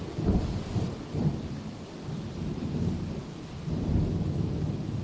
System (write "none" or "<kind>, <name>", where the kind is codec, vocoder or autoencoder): none